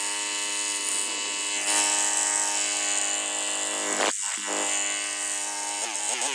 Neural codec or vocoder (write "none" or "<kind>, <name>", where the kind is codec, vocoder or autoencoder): none